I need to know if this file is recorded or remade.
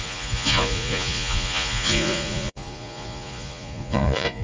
remade